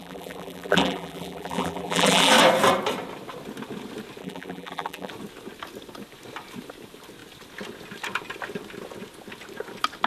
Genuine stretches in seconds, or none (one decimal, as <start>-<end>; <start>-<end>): 2.3-4.2; 5.1-10.1